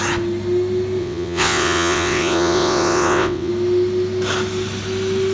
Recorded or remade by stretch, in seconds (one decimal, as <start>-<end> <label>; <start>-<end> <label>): 0.0-1.0 recorded; 1.0-3.5 remade; 3.5-5.3 recorded